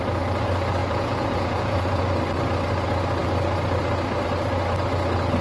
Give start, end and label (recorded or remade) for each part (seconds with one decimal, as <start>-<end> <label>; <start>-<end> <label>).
0.0-0.8 recorded; 0.8-2.1 remade; 2.1-5.4 recorded